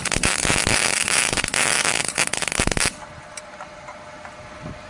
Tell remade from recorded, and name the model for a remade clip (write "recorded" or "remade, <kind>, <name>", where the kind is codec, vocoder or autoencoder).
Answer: recorded